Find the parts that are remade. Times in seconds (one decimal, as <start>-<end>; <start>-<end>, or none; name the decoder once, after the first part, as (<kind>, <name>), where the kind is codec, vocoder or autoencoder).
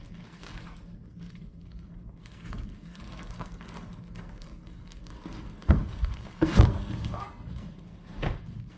0.0-8.8 (codec, SNAC)